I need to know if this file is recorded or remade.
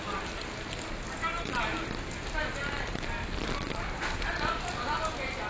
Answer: recorded